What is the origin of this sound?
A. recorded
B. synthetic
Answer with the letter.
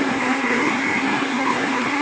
B